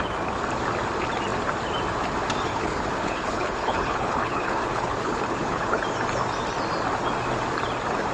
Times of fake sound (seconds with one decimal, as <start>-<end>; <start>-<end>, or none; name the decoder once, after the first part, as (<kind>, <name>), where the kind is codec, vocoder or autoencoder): 2.5-5.8 (codec, HILCodec)

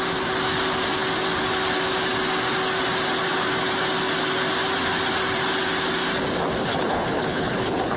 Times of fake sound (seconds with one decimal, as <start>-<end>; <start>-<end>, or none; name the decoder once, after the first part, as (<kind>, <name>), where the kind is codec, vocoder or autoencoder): 6.7-8.0 (codec, HILCodec)